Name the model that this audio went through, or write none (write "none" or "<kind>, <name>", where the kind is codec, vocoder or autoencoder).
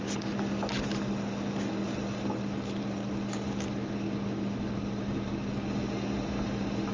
none